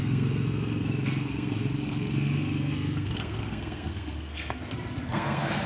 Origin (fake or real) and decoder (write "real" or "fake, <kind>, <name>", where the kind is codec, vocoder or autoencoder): fake, codec, SNAC